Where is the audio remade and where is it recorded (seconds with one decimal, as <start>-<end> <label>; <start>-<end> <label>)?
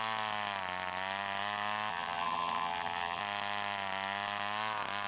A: 0.0-1.9 recorded; 1.9-3.2 remade; 3.2-5.1 recorded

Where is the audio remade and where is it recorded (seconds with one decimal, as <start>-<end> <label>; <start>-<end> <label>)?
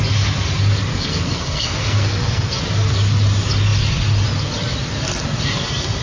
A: 0.0-0.9 recorded; 0.9-2.6 remade; 2.6-6.0 recorded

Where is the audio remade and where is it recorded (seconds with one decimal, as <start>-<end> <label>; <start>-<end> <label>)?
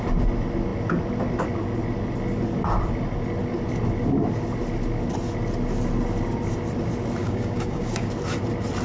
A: 0.0-7.2 recorded; 7.2-8.1 remade; 8.1-8.8 recorded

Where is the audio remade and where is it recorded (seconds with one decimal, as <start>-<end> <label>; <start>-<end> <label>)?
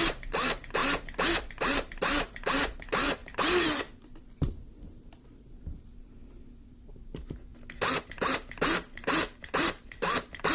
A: 0.0-0.8 remade; 0.8-1.5 recorded; 1.5-7.5 remade; 7.5-8.0 recorded; 8.0-10.5 remade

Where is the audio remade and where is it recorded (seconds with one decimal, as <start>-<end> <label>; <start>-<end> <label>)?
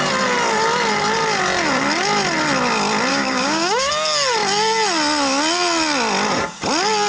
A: 0.0-3.1 recorded; 3.1-3.9 remade; 3.9-7.1 recorded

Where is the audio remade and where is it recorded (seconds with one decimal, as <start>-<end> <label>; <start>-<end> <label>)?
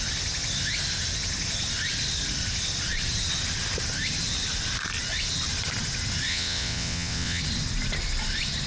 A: 0.0-6.3 recorded; 6.3-7.4 remade; 7.4-8.7 recorded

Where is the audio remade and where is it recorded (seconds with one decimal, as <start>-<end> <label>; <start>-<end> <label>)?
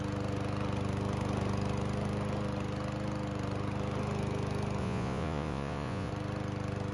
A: 0.0-4.8 recorded; 4.8-6.1 remade; 6.1-6.9 recorded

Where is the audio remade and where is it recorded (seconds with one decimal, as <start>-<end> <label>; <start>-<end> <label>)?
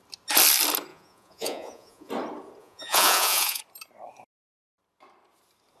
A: 0.0-0.9 recorded; 0.9-2.1 remade; 2.1-2.6 recorded; 2.6-3.6 remade; 3.6-5.8 recorded